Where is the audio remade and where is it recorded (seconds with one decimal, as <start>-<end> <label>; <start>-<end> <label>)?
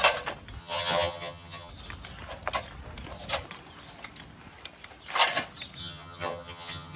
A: 0.0-0.6 recorded; 0.6-1.7 remade; 1.7-5.8 recorded; 5.8-7.0 remade